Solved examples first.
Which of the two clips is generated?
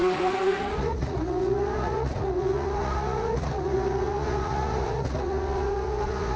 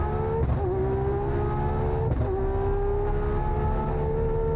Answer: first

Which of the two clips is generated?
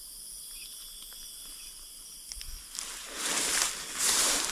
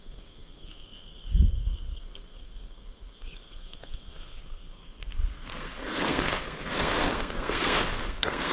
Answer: second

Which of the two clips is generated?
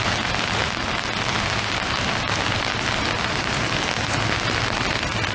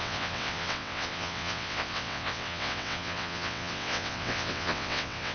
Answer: second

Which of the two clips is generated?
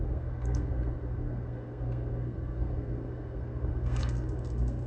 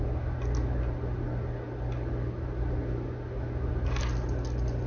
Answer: first